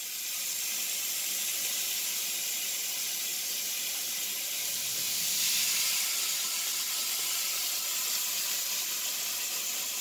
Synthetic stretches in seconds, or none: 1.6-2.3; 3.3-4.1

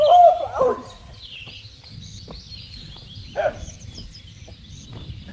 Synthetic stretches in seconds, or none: 0.0-1.0; 4.2-5.3

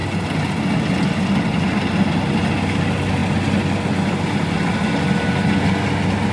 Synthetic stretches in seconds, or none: none

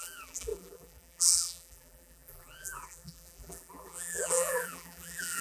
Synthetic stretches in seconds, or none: 0.0-5.4

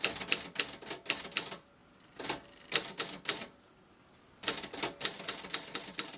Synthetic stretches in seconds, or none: none